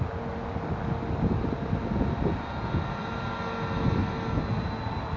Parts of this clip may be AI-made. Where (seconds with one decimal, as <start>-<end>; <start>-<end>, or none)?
none